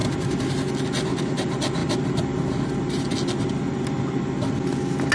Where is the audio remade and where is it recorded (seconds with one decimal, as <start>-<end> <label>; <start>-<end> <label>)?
0.0-5.1 recorded